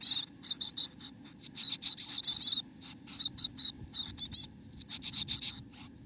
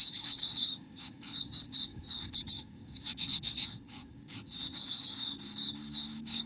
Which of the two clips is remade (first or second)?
second